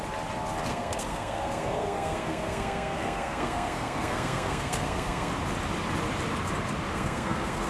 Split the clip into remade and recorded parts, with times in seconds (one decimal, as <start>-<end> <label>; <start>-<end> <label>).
0.0-0.7 recorded; 0.7-5.3 remade; 5.3-6.9 recorded; 6.9-7.7 remade